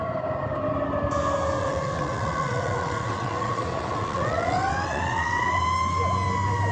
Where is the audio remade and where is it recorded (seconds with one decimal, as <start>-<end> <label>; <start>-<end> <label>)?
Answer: 0.0-1.6 recorded; 1.6-5.6 remade; 5.6-6.7 recorded